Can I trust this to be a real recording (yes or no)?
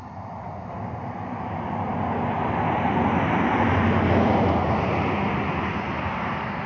yes